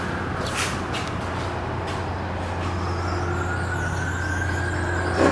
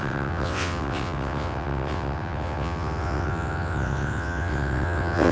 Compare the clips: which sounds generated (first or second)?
second